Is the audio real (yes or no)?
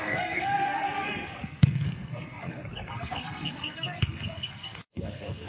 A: no